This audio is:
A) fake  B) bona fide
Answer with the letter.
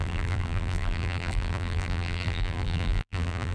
A